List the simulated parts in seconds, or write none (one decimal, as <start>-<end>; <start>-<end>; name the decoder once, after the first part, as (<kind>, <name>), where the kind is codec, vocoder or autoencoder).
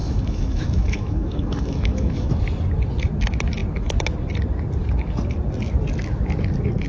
0.0-2.3 (autoencoder, DAC-VAE)